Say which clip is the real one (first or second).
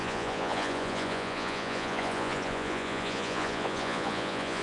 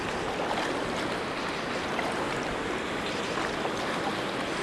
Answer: second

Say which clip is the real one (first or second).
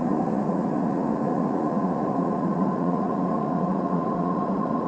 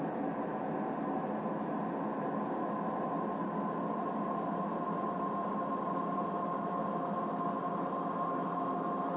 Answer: second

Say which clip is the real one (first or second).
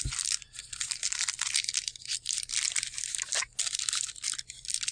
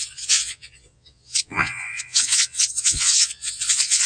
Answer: first